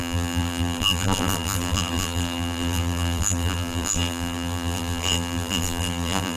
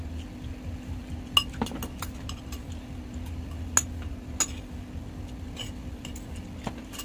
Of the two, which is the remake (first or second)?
first